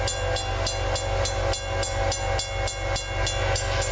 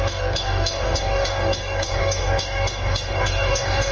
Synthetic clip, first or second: second